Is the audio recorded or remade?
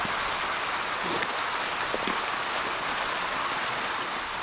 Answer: recorded